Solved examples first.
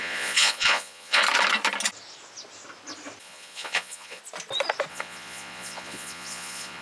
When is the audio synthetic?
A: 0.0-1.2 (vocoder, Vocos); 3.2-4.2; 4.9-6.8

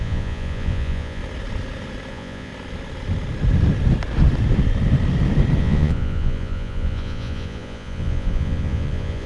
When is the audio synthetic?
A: 0.0-1.2 (vocoder, Vocos); 2.1-2.5; 5.6-9.3